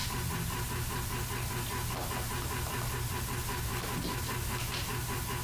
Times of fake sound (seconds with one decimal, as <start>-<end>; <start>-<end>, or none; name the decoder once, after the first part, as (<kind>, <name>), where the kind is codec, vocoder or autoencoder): none